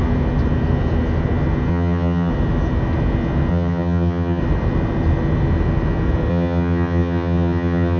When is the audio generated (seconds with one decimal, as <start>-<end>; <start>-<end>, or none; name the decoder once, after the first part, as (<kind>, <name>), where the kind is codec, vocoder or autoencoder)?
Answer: 1.7-2.3 (vocoder, HiFi-GAN); 3.5-4.4; 6.3-8.0